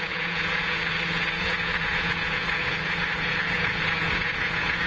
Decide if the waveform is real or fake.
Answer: fake